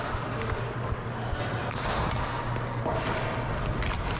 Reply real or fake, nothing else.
real